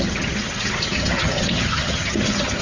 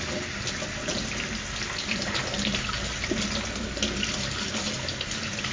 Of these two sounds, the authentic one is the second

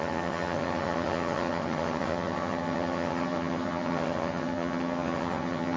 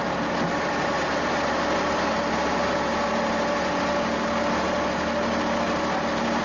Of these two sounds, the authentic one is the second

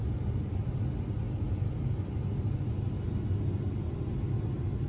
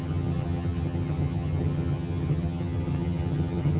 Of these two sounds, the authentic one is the first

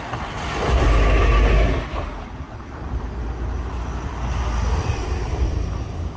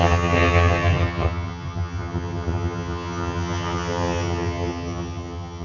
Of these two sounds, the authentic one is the first